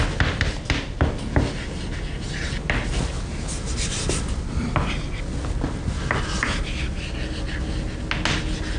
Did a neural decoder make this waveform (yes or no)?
no